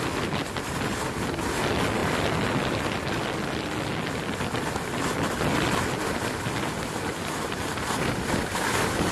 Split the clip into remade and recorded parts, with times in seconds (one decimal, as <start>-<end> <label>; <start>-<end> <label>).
0.0-9.1 recorded